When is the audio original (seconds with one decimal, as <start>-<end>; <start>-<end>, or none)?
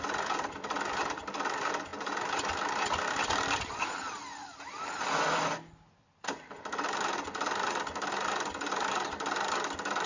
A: 0.0-10.1